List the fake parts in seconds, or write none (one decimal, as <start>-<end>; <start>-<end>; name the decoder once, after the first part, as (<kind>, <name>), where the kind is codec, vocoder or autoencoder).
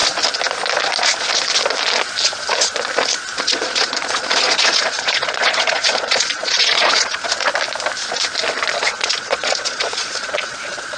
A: 3.4-7.5 (vocoder, Vocos); 8.8-11.0